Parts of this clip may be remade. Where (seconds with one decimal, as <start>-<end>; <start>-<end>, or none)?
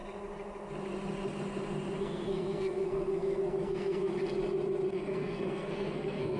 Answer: 2.0-4.1; 4.9-6.4